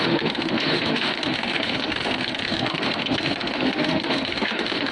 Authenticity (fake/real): fake